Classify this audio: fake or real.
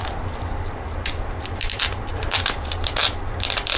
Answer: fake